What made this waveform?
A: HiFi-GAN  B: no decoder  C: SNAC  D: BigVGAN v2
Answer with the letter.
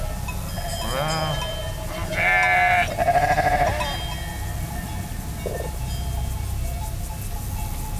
B